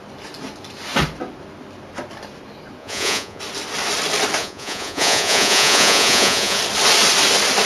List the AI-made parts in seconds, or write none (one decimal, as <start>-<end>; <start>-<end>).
2.8-3.4; 4.4-6.6